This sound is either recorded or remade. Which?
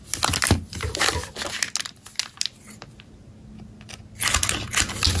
recorded